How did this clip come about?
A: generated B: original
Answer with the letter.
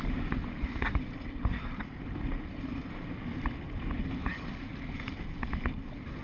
B